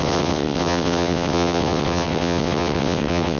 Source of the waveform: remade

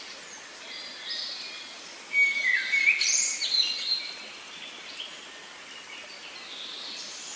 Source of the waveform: recorded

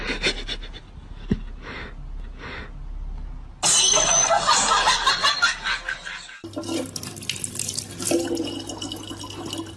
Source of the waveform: recorded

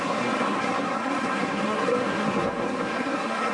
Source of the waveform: remade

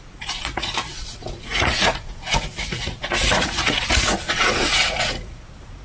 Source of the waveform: remade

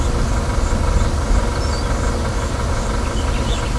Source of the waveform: recorded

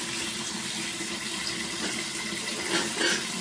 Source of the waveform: recorded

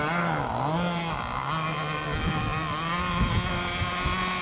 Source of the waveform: recorded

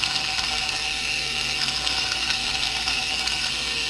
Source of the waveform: remade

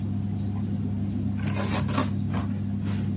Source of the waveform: recorded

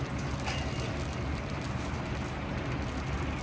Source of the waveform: recorded